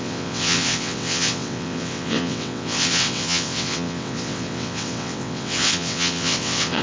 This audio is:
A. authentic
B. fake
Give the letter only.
B